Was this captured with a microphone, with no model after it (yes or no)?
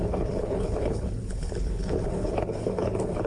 no